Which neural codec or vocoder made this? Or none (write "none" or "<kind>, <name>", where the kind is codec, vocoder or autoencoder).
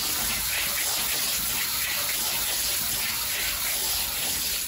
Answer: none